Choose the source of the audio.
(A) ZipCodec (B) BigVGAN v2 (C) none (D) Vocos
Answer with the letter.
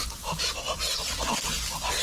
B